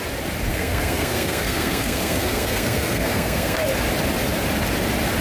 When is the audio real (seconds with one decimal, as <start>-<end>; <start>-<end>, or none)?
0.0-0.5; 3.6-5.2